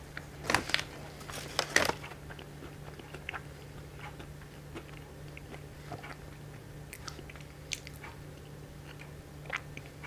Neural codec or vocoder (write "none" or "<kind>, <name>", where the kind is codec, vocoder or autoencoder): none